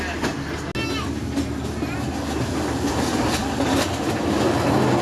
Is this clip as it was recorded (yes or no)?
yes